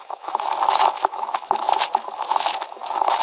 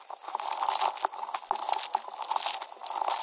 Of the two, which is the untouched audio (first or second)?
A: second